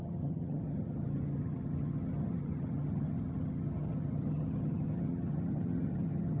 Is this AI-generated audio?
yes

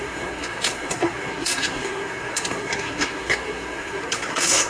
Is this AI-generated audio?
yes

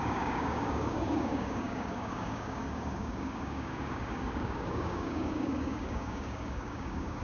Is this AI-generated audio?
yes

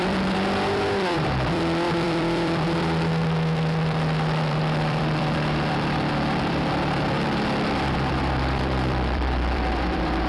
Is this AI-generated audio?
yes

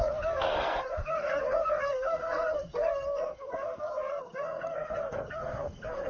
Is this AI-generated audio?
yes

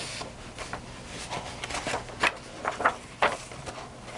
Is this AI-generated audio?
no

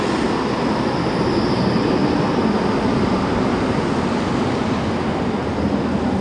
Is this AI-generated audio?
no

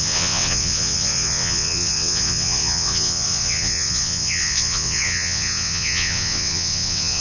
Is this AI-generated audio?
yes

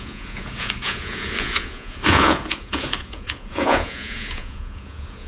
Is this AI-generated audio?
yes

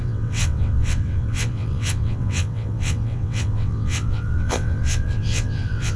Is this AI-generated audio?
yes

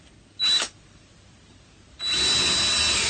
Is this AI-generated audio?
no